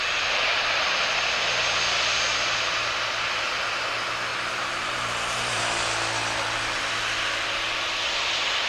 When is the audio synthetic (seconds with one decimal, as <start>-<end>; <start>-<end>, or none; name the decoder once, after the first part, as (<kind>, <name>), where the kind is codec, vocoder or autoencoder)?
4.3-5.6 (vocoder, BigVGAN v2)